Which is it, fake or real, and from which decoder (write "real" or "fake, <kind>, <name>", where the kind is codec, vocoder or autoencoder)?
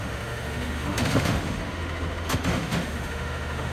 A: fake, autoencoder, DAC-VAE